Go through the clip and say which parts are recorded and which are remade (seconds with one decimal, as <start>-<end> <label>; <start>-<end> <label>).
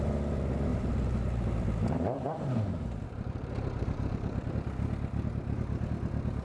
0.0-0.7 recorded; 0.7-4.5 remade; 4.5-6.4 recorded